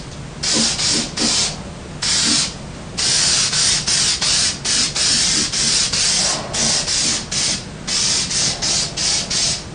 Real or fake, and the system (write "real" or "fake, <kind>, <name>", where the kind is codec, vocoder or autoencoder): real